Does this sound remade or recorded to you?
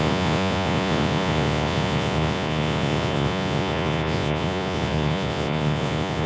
remade